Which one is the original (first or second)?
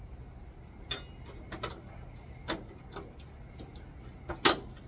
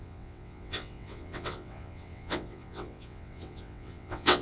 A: first